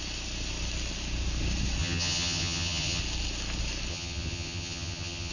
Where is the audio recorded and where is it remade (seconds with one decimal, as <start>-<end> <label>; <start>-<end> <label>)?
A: 0.0-1.8 recorded; 1.8-3.0 remade; 3.0-3.9 recorded; 3.9-5.3 remade